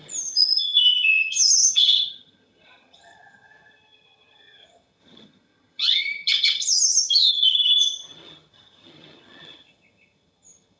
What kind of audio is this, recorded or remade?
remade